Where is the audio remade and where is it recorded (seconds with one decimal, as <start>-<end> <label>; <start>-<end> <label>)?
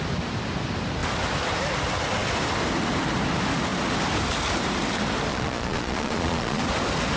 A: 0.0-5.3 recorded; 5.3-6.6 remade; 6.6-7.2 recorded